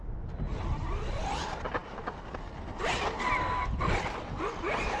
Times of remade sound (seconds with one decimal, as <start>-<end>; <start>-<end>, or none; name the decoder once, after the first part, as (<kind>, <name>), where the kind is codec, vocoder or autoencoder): none